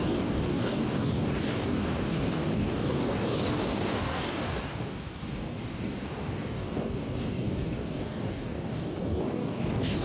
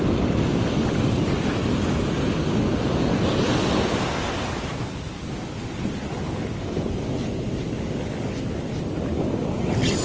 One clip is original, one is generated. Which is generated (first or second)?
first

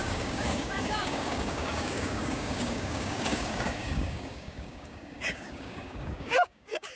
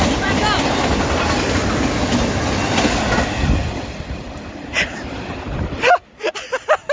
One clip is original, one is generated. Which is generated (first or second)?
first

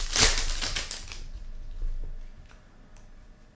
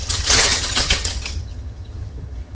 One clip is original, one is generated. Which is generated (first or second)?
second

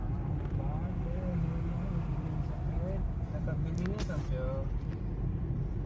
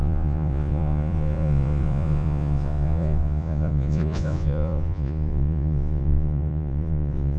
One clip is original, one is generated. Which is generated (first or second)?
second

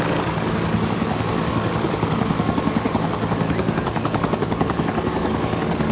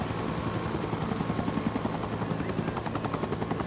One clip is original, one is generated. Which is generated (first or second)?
first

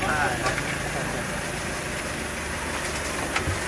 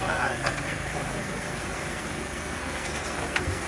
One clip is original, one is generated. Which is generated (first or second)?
second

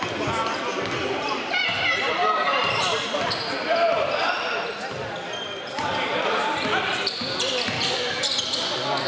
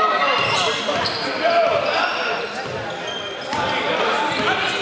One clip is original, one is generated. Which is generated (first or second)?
first